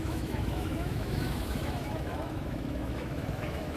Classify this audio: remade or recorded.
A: remade